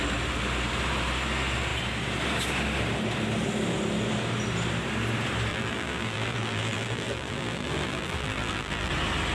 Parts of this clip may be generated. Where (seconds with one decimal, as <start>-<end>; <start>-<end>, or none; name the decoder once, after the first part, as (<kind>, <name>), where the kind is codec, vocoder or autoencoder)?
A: 5.5-8.9 (vocoder, BigVGAN v2)